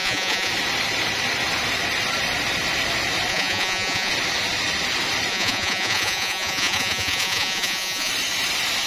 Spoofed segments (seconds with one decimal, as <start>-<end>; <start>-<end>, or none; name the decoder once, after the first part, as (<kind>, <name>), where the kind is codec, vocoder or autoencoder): 0.0-0.5 (vocoder, Vocos); 3.3-4.1; 5.3-8.1